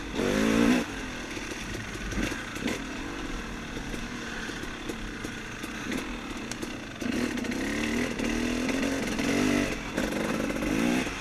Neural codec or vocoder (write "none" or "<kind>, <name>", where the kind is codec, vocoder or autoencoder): none